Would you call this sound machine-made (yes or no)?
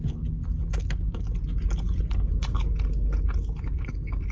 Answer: no